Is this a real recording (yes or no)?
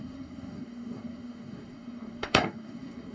no